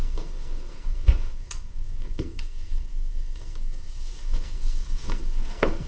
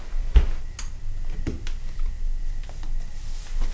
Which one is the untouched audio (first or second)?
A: second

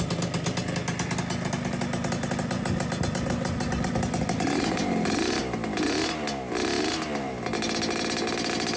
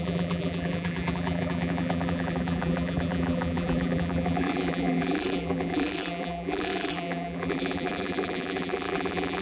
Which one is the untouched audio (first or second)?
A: first